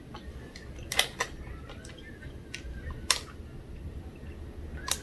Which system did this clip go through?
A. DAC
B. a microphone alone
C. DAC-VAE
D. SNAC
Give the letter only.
B